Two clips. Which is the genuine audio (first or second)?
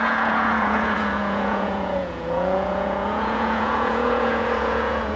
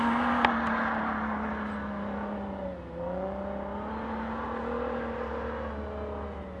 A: second